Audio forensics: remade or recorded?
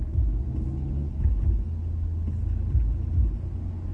recorded